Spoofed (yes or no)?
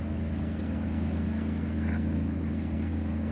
yes